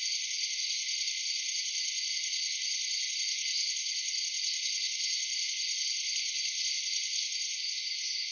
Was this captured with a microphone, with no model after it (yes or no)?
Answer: yes